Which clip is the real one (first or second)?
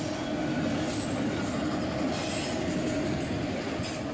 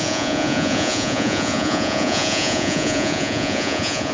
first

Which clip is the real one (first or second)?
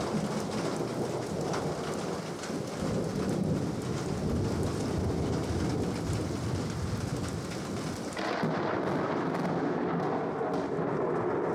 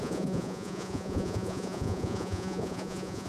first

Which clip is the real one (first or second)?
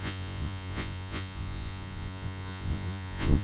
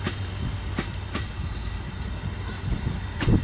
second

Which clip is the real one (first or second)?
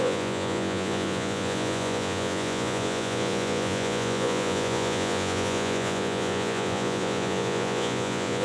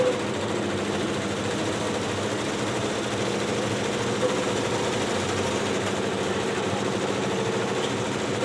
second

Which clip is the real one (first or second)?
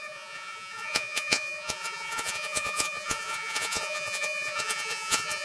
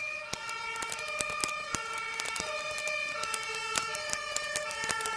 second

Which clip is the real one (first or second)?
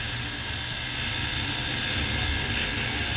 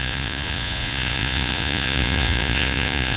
first